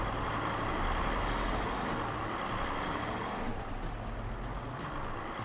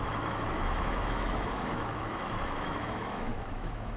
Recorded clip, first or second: first